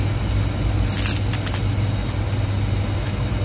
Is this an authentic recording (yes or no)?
yes